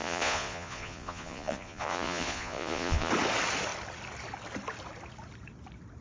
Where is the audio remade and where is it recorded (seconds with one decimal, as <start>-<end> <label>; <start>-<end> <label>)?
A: 0.0-3.1 remade; 3.1-6.0 recorded